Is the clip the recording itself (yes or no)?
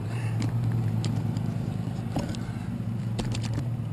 no